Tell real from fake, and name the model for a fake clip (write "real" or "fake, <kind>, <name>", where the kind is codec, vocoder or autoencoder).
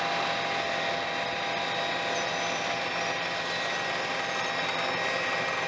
real